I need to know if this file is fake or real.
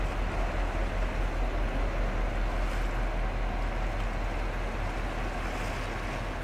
real